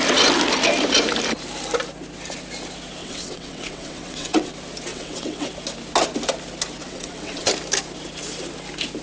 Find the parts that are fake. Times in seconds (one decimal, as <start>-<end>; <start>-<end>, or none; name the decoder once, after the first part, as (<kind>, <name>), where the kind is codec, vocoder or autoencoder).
3.0-4.5 (vocoder, WaveNeXt); 4.9-5.5; 6.8-7.5